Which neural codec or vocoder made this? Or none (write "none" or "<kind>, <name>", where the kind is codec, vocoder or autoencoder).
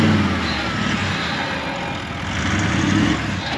none